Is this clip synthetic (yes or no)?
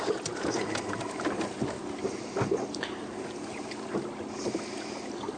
no